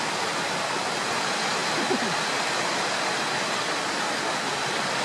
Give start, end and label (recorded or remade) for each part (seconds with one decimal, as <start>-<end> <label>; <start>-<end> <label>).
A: 0.0-5.0 recorded